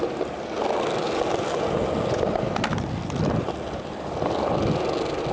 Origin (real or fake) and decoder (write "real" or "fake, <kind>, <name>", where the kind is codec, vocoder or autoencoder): real